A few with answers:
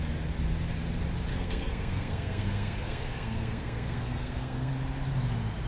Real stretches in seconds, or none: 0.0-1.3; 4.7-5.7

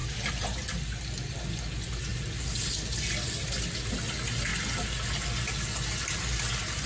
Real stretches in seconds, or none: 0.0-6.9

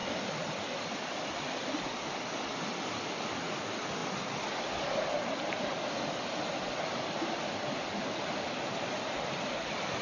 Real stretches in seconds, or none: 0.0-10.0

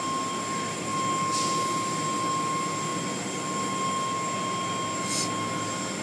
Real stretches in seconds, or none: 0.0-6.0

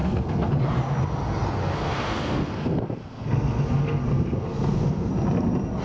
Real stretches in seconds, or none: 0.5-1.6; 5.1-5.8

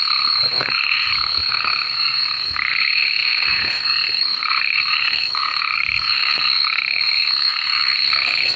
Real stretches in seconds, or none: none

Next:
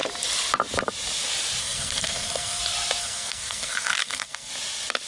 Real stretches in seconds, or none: 0.0-1.6; 2.6-3.0; 4.5-5.1